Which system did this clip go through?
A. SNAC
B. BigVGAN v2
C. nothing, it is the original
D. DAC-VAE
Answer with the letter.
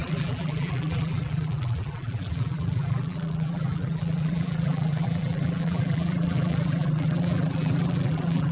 B